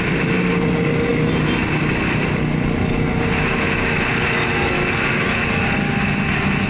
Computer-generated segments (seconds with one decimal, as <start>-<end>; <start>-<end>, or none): none

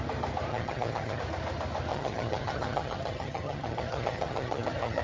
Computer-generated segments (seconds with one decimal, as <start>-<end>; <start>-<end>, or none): 0.5-1.2; 1.9-5.0

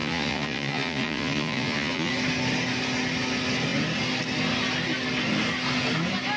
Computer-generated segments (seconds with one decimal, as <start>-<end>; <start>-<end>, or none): 0.0-2.1